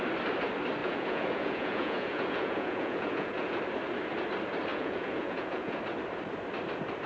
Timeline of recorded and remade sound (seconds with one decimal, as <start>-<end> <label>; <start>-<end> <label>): 0.0-0.8 recorded; 0.8-3.6 remade; 3.6-4.7 recorded; 4.7-5.8 remade; 5.8-7.1 recorded